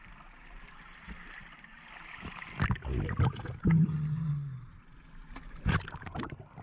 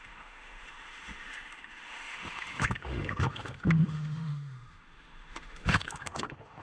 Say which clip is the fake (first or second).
second